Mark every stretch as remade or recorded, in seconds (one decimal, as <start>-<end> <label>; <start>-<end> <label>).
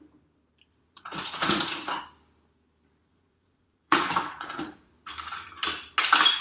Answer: 0.0-0.7 recorded; 0.7-2.0 remade; 2.0-3.0 recorded; 3.0-4.9 remade; 4.9-6.4 recorded